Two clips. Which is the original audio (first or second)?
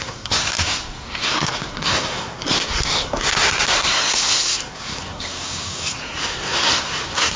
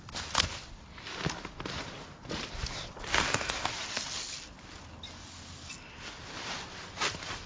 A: second